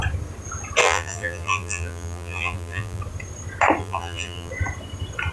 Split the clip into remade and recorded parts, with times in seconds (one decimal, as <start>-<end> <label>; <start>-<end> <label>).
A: 0.0-0.8 recorded; 0.8-3.0 remade; 3.0-3.8 recorded; 3.8-4.5 remade; 4.5-5.3 recorded